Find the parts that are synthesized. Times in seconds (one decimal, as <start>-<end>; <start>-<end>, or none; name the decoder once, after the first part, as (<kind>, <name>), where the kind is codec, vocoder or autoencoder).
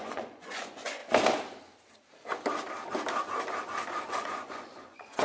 0.0-1.0 (vocoder, Vocos); 4.1-5.2